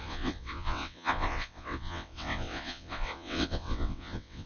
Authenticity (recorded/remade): remade